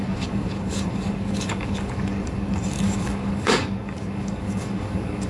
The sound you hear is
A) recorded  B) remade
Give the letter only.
B